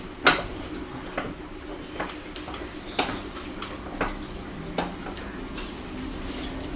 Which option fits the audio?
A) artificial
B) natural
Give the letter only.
B